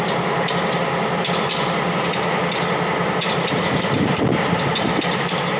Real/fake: real